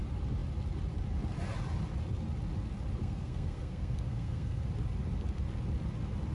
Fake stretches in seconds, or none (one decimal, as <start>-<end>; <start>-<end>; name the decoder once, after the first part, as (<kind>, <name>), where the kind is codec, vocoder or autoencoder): 3.0-4.6 (codec, SNAC)